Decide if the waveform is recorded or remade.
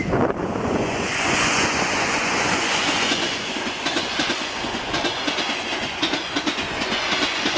remade